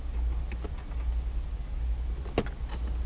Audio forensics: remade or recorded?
recorded